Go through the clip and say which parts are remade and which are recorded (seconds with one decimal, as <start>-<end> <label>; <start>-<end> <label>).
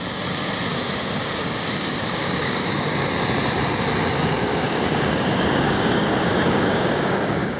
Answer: 0.0-0.7 recorded; 0.7-2.9 remade; 2.9-4.5 recorded; 4.5-7.6 remade